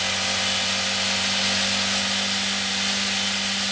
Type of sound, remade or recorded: recorded